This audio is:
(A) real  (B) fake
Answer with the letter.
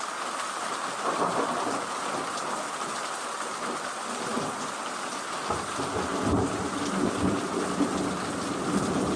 A